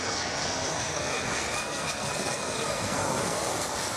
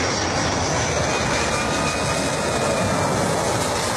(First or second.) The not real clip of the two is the first